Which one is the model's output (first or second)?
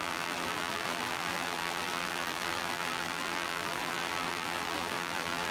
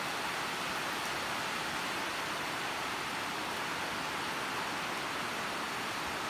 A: first